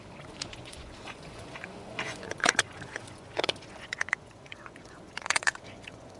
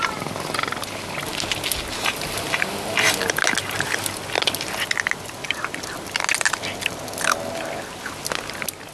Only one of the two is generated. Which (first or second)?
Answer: first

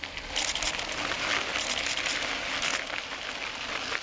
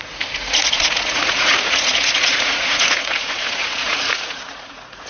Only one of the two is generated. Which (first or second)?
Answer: second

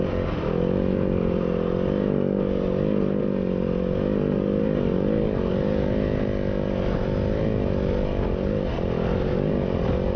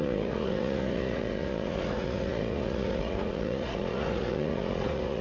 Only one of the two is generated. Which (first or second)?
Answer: second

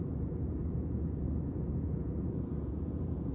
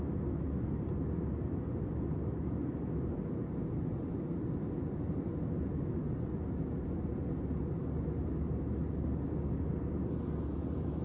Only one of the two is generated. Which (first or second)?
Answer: first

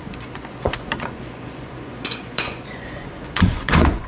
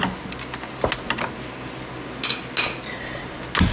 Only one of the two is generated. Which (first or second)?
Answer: first